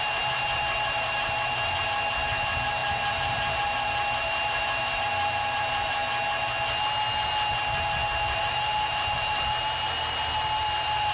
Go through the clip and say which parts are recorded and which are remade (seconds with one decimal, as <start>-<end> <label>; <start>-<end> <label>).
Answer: 0.0-6.0 remade; 6.0-8.4 recorded; 8.4-11.1 remade